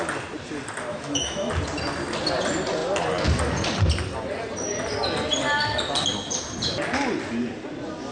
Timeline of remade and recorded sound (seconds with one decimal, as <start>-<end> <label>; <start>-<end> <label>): 0.0-0.9 recorded; 0.9-1.5 remade; 1.5-8.1 recorded